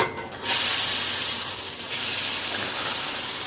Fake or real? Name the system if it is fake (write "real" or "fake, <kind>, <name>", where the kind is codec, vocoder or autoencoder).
real